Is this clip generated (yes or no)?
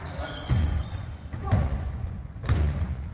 yes